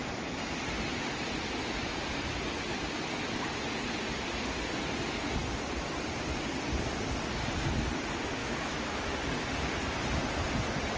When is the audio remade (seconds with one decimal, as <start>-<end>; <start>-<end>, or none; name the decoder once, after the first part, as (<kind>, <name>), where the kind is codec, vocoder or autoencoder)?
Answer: 8.4-9.0 (autoencoder, DAC-VAE)